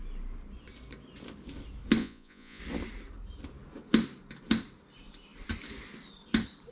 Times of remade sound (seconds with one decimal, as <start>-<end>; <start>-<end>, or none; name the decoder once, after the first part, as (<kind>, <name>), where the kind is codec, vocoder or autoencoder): 2.0-2.6 (vocoder, Vocos)